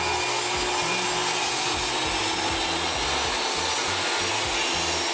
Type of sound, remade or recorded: recorded